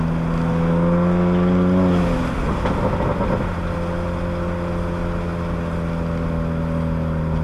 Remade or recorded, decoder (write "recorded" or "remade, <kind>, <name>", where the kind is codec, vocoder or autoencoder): recorded